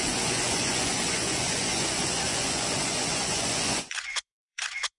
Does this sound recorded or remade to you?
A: remade